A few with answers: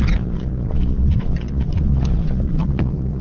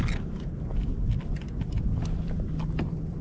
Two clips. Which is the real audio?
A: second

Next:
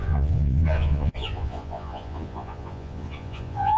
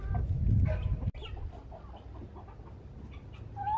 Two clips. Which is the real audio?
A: second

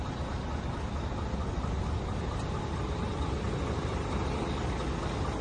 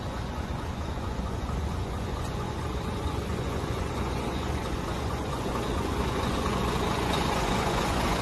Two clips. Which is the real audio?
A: first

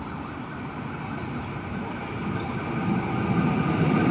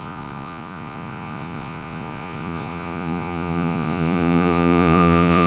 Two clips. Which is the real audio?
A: first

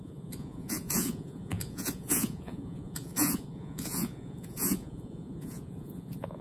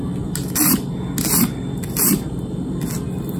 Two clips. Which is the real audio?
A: second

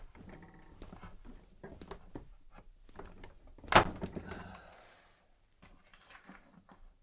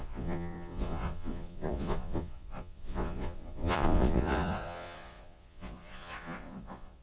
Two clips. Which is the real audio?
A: first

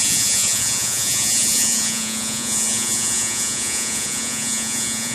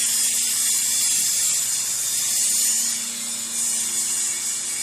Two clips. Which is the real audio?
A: second